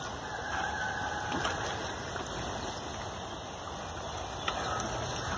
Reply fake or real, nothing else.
real